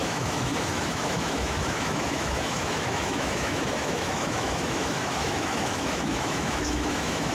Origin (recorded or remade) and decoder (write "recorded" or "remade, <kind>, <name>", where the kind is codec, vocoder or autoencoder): remade, autoencoder, DAC-VAE